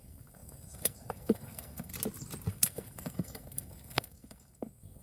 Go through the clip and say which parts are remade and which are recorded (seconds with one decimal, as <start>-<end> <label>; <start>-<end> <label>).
0.0-1.9 remade; 1.9-2.5 recorded; 2.5-5.0 remade